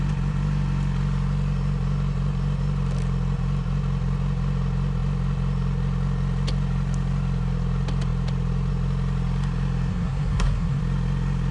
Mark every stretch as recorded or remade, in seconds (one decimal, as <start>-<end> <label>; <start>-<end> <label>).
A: 0.0-9.9 recorded; 9.9-10.8 remade; 10.8-11.5 recorded